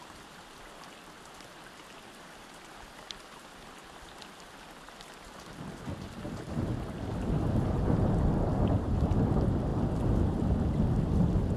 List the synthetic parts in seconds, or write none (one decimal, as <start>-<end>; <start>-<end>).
none